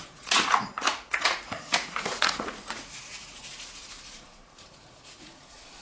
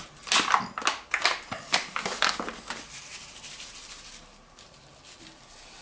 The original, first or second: second